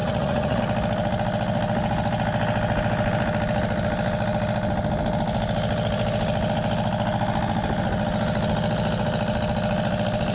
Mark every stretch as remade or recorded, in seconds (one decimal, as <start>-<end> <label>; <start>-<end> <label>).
0.0-0.6 remade; 0.6-10.3 recorded